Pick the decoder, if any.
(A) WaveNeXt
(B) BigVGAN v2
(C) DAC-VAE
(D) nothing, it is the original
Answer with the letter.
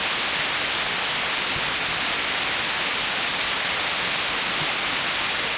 D